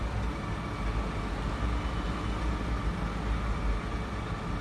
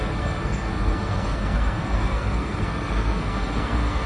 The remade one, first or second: second